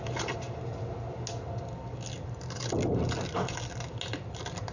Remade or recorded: recorded